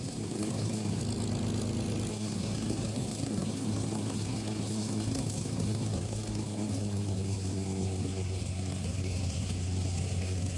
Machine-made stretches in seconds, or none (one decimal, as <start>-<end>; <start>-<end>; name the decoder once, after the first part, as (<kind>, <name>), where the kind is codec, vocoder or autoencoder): 0.0-1.0 (codec, SNAC); 2.1-10.6